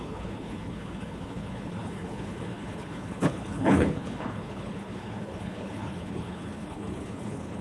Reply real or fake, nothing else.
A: fake